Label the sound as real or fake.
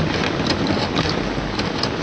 real